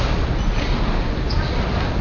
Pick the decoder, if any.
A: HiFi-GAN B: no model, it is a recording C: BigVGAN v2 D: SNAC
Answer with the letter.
B